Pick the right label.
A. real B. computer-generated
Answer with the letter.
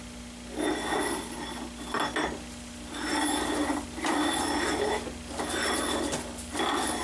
A